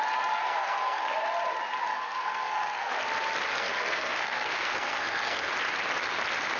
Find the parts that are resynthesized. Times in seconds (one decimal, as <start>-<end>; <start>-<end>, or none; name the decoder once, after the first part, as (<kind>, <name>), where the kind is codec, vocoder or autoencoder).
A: 0.4-1.0 (codec, SNAC); 1.9-2.9; 3.5-5.5